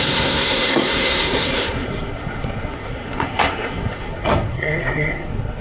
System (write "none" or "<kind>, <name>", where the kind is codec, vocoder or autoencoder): codec, SNAC